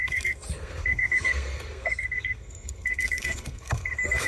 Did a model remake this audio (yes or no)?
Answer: yes